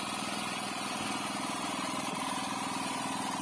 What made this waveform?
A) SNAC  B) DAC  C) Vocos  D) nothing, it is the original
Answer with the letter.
D